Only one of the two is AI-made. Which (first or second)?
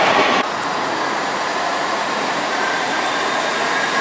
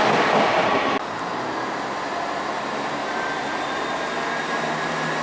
first